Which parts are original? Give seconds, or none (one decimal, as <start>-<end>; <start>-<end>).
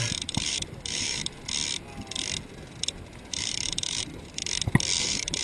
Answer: 1.2-3.1; 4.4-5.0